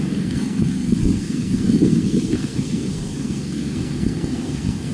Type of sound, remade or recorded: remade